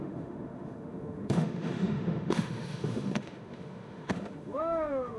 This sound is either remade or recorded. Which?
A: remade